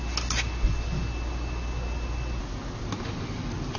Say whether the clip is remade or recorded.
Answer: recorded